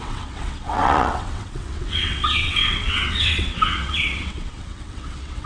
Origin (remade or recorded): remade